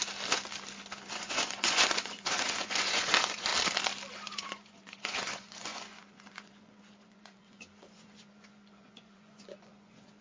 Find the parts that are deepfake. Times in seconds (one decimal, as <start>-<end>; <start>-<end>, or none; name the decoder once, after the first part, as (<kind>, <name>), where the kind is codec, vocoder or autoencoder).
1.1-3.5 (vocoder, Vocos); 4.1-10.2